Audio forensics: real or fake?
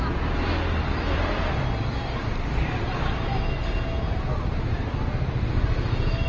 real